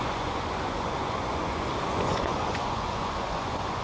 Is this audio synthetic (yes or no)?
yes